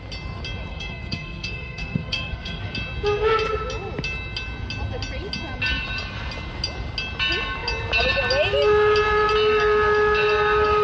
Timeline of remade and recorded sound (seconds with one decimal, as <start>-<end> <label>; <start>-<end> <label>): 0.0-0.7 recorded; 0.7-2.6 remade; 2.6-10.8 recorded